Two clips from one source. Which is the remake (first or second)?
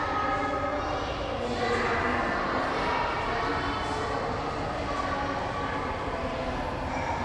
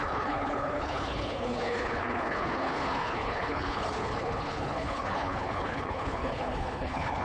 second